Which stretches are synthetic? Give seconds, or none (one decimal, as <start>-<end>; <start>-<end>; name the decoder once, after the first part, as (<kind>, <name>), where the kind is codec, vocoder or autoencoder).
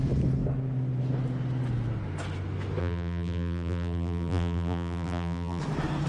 2.8-5.6 (vocoder, BigVGAN v2)